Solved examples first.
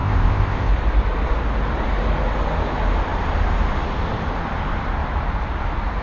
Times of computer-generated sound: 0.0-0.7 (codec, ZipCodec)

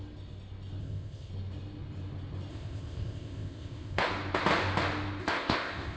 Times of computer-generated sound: 0.8-1.3 (codec, ZipCodec); 2.5-4.1; 5.2-6.0

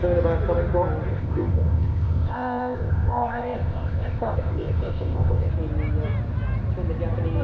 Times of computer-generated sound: 1.1-5.5 (codec, ZipCodec)